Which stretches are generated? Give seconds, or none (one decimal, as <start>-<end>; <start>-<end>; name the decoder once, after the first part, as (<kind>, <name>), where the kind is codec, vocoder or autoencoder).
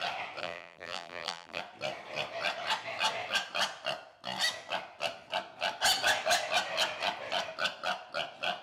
0.4-1.6 (vocoder, BigVGAN v2)